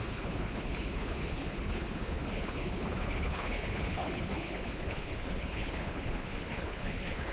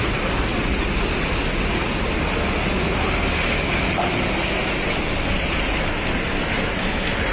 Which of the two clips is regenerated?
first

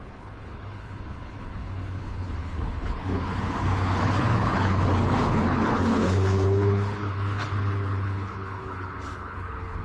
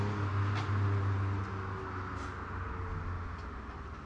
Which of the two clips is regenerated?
first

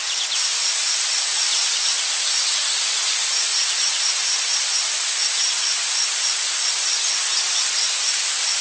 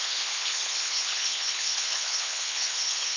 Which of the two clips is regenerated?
second